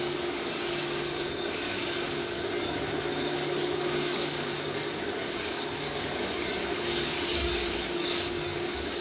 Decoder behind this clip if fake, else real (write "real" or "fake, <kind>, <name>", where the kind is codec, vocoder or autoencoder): fake, codec, DAC